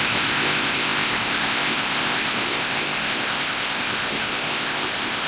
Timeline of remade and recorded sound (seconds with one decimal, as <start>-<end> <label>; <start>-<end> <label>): 0.0-5.3 remade